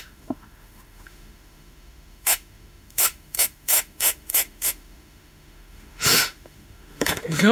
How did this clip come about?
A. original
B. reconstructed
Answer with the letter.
B